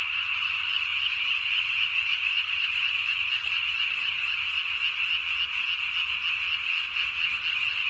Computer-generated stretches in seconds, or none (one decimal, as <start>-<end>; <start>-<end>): 0.0-4.4; 7.5-7.9